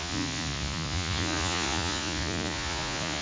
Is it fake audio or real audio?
fake